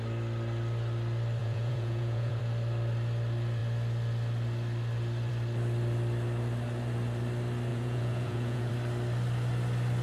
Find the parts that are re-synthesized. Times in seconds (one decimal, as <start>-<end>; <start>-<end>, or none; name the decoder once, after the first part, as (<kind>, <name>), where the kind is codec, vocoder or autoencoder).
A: 1.4-2.4 (vocoder, Vocos); 7.7-8.7